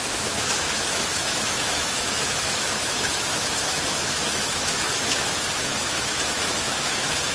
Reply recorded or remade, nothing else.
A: remade